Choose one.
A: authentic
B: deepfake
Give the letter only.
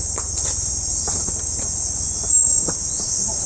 A